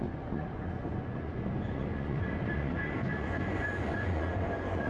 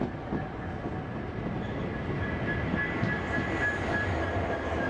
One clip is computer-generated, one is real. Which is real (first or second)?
second